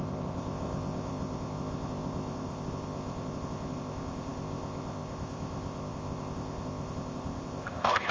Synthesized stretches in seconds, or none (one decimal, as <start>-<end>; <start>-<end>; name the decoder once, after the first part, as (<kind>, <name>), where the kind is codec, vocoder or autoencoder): 0.0-8.1 (codec, ZipCodec)